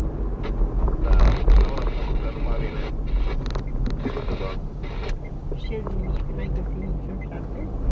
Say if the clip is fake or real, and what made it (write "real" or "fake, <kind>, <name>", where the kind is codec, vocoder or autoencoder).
real